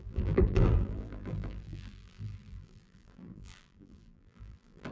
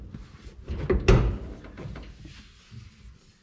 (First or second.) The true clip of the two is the second